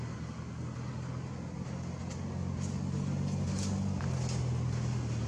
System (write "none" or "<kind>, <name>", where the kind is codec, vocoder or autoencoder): none